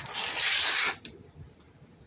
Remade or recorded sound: recorded